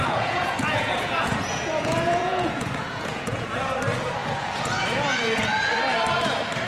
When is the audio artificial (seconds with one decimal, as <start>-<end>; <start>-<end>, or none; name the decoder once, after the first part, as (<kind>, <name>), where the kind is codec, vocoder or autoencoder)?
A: 0.0-3.6 (vocoder, Vocos); 4.2-5.7